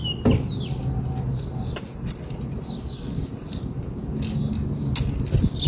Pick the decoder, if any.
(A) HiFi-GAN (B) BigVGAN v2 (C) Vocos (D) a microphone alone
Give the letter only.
D